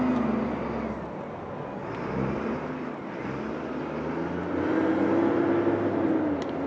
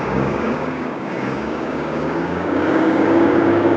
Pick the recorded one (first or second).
first